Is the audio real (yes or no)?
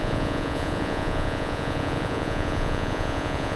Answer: no